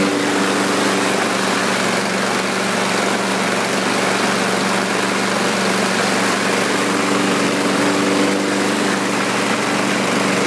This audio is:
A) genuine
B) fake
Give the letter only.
A